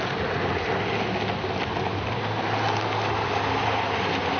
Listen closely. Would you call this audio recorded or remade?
recorded